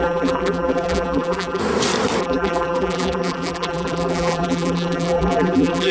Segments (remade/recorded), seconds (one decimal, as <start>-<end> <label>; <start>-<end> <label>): 0.0-1.6 remade; 1.6-2.2 recorded; 2.2-5.9 remade